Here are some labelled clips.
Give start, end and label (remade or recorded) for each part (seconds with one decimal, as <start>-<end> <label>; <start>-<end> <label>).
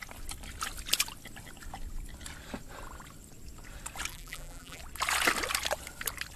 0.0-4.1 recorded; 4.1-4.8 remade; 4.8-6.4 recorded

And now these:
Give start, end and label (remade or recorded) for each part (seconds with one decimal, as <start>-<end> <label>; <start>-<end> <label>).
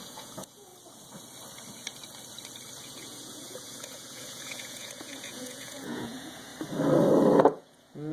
0.0-0.7 remade; 0.7-2.8 recorded; 2.8-6.5 remade; 6.5-7.4 recorded; 7.4-8.1 remade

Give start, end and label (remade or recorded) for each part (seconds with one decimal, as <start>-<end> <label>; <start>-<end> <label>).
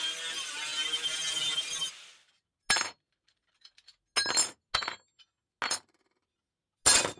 0.0-7.2 recorded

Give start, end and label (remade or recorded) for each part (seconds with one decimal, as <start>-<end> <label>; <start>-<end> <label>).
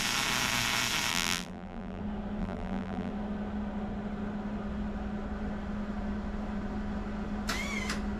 0.0-1.1 recorded; 1.1-2.0 remade; 2.0-2.4 recorded; 2.4-3.1 remade; 3.1-8.2 recorded